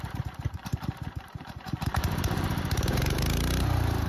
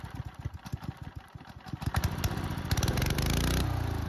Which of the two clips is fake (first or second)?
first